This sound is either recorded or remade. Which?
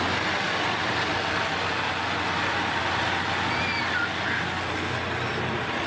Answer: recorded